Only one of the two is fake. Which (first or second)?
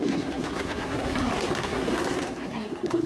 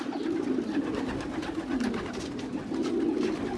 first